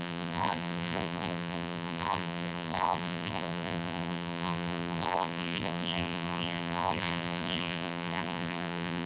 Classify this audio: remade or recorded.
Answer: remade